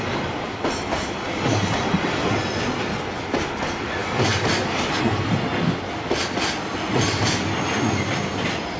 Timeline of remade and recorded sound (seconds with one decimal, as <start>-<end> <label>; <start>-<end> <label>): 0.0-8.8 recorded